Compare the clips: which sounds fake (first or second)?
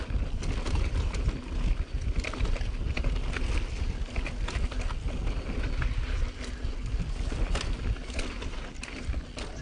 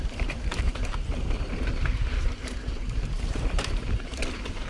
second